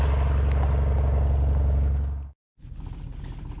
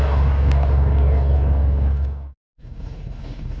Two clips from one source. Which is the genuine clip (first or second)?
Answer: first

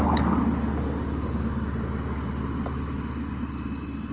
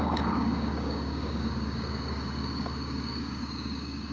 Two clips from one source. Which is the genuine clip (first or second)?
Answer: first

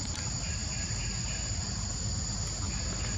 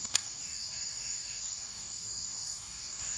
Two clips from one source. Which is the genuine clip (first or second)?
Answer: first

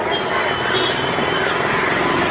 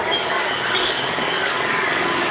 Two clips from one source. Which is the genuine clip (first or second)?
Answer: first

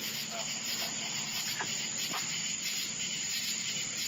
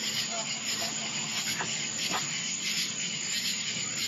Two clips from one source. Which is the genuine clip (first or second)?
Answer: first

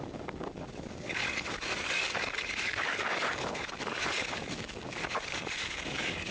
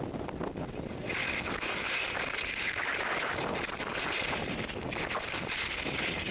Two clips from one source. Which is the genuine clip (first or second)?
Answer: second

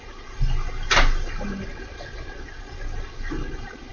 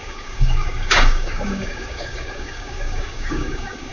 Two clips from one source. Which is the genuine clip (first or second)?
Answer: first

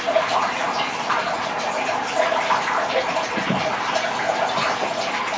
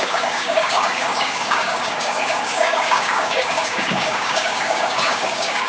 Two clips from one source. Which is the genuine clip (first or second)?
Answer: first